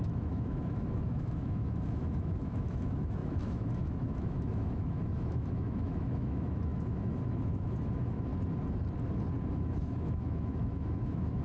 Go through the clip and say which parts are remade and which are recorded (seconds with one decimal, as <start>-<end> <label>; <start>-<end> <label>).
0.0-8.3 remade; 8.3-9.5 recorded; 9.5-11.4 remade